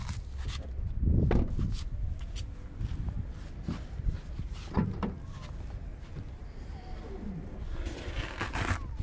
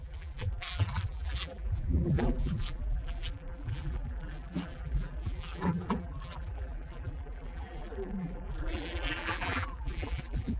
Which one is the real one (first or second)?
first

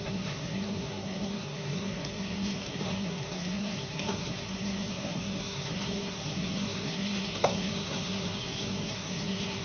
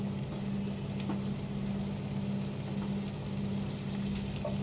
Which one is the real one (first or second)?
second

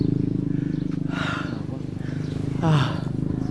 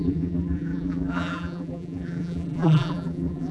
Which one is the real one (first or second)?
first